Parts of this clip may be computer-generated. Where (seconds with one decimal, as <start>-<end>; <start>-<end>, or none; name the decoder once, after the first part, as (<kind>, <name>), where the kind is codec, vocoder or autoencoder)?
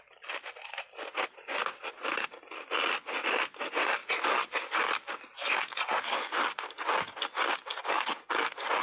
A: none